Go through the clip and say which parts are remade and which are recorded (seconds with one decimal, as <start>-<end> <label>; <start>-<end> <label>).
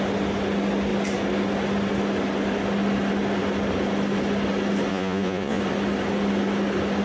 0.0-4.9 recorded; 4.9-5.6 remade; 5.6-7.0 recorded